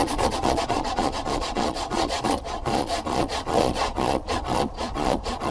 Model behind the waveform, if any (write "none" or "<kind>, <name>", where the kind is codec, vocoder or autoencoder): vocoder, Vocos